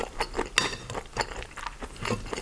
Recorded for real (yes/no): yes